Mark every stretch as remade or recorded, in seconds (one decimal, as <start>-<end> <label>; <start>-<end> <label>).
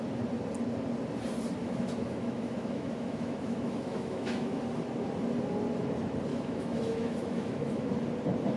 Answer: 0.0-1.6 recorded; 1.6-4.6 remade; 4.6-6.3 recorded; 6.3-7.9 remade; 7.9-8.6 recorded